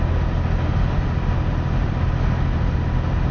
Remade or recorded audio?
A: recorded